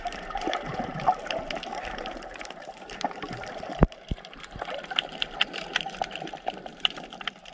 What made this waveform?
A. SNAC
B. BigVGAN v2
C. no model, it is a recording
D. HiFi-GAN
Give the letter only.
B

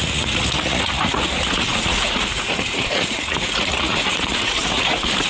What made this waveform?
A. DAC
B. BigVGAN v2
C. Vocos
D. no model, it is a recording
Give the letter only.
C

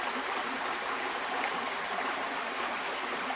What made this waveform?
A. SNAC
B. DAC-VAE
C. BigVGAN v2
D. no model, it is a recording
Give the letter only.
D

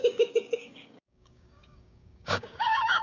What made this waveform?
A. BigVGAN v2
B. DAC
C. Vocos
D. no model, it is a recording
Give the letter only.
B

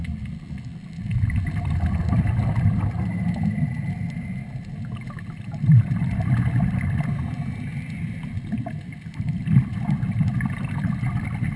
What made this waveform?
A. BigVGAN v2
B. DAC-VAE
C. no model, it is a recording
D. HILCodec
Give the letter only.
C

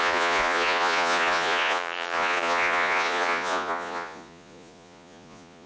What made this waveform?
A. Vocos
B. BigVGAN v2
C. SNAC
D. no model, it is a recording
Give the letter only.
A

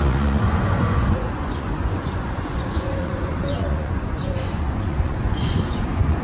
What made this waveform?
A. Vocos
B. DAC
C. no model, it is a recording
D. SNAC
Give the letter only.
A